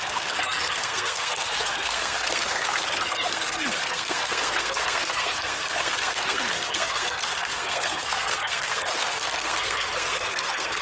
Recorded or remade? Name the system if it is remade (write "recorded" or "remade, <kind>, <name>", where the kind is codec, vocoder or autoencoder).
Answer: remade, codec, SNAC